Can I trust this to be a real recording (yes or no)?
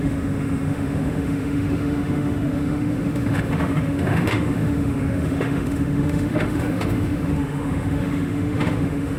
no